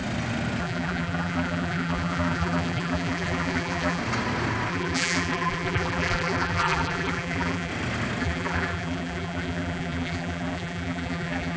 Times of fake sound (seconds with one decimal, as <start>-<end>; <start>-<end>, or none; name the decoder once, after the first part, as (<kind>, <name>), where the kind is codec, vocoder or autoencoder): 0.6-4.0 (vocoder, BigVGAN v2); 4.7-7.7; 8.2-11.6